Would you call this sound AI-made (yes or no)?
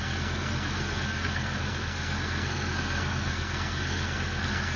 yes